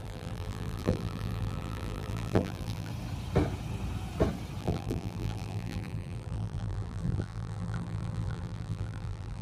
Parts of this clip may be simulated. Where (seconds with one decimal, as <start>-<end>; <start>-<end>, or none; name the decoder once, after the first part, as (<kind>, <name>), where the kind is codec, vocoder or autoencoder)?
0.0-2.9 (vocoder, BigVGAN v2); 4.6-9.4